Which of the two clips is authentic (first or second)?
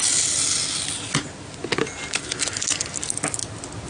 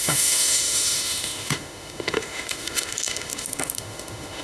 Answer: first